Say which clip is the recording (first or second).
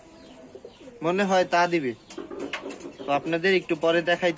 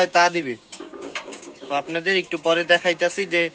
first